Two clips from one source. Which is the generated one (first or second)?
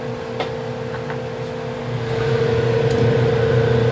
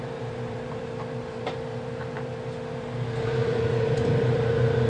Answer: second